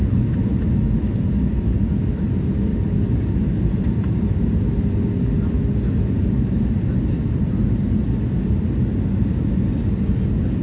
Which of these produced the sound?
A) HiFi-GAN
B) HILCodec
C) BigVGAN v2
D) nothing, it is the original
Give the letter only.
D